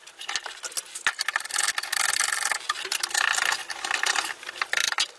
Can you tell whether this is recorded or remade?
recorded